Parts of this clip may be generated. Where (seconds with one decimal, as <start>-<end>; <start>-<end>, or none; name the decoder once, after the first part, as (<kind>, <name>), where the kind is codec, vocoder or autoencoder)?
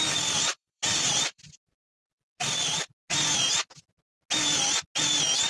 0.5-2.1 (vocoder, BigVGAN v2)